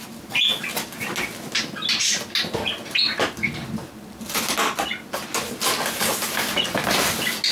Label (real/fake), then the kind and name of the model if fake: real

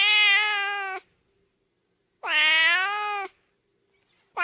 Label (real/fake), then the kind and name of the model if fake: real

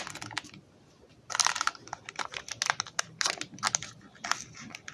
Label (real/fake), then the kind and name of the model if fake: real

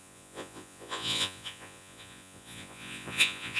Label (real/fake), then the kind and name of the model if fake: fake, vocoder, Vocos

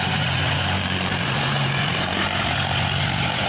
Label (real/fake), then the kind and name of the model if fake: fake, vocoder, Vocos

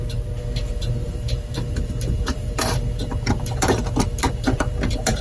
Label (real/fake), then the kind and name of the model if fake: fake, vocoder, BigVGAN v2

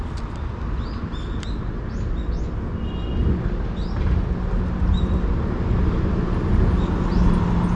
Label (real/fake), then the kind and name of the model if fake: real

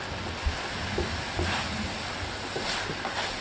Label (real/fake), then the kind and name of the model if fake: real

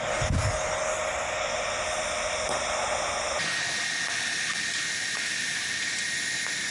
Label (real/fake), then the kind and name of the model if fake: real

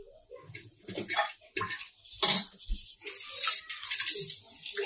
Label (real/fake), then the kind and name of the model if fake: real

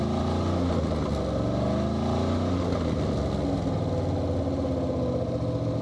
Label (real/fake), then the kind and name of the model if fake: real